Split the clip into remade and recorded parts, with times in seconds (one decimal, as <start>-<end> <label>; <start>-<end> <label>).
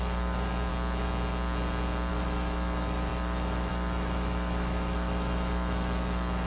0.0-0.7 remade; 0.7-2.1 recorded; 2.1-6.5 remade